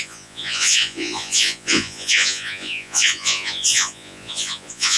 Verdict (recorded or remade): remade